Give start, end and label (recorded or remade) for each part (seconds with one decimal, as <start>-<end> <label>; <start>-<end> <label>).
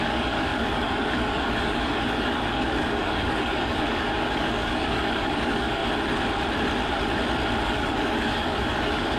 0.0-5.8 remade; 5.8-7.6 recorded; 7.6-9.2 remade